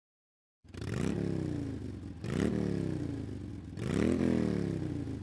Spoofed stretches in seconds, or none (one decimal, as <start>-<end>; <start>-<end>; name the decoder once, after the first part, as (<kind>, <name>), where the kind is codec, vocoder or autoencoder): none